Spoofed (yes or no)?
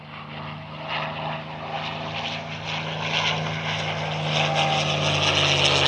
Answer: no